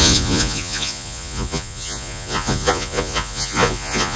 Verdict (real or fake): fake